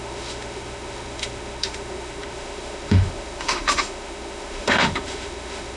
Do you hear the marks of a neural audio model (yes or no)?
yes